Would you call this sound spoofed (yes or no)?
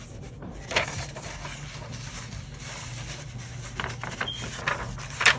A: no